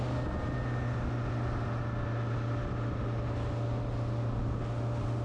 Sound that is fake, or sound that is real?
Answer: real